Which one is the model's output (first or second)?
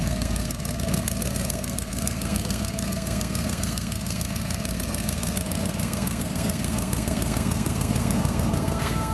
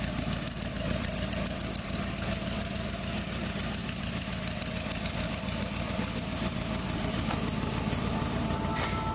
first